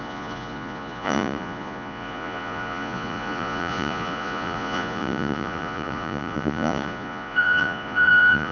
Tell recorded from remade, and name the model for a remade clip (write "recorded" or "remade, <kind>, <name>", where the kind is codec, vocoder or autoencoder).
remade, vocoder, Vocos